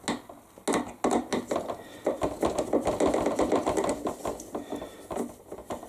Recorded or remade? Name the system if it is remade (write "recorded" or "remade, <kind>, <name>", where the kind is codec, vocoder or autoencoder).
recorded